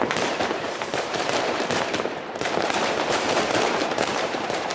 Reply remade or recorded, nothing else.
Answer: remade